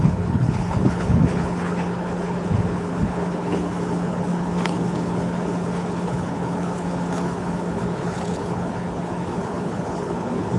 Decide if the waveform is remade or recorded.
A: remade